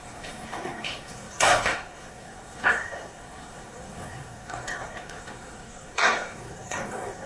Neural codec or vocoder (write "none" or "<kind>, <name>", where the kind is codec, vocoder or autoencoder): codec, SNAC